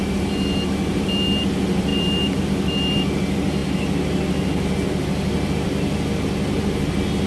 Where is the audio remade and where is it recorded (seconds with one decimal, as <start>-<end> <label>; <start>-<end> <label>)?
0.0-7.3 recorded